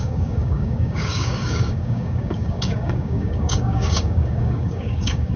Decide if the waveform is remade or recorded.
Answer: remade